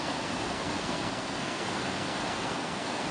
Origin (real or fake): fake